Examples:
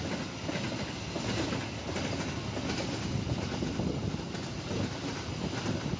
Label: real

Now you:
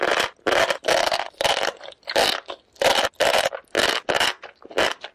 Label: real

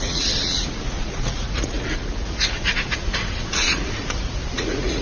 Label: fake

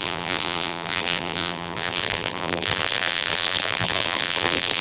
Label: fake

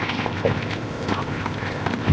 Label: fake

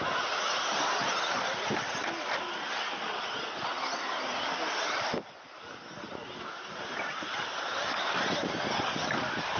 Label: real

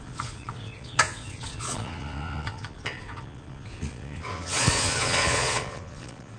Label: fake